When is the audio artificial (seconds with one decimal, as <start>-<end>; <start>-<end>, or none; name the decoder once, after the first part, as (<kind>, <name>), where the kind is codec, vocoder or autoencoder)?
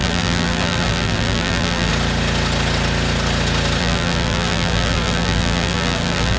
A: 0.0-1.9 (vocoder, BigVGAN v2); 3.8-6.4